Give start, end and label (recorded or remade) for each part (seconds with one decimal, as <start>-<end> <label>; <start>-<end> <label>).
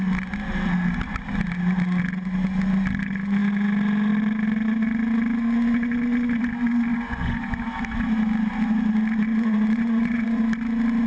0.0-6.9 recorded; 6.9-7.5 remade; 7.5-9.3 recorded; 9.3-10.4 remade; 10.4-11.1 recorded